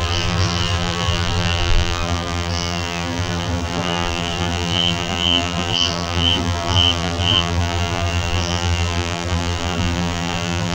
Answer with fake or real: fake